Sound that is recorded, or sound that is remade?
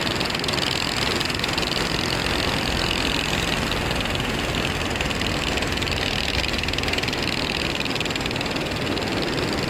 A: recorded